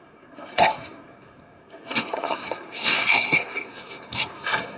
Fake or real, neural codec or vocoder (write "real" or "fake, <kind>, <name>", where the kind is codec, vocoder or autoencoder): fake, codec, SNAC